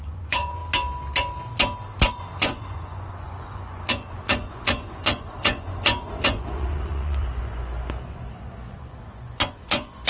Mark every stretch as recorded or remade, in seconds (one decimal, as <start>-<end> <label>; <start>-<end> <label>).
0.0-0.6 remade; 0.6-2.1 recorded; 2.1-10.1 remade